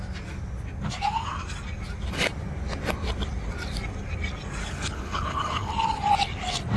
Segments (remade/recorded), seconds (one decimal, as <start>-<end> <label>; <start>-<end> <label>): 0.0-4.6 recorded; 4.6-5.7 remade; 5.7-6.8 recorded